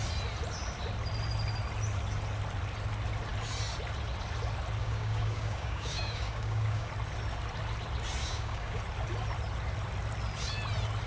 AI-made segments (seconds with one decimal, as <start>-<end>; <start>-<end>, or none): 4.8-6.9; 8.2-8.8